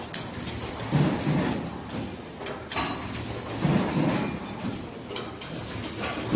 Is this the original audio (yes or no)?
yes